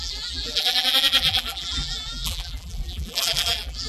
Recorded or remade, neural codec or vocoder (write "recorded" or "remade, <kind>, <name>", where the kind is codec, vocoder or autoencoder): remade, vocoder, BigVGAN v2